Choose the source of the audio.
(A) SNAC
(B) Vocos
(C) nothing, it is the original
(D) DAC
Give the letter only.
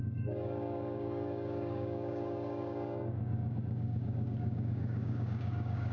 D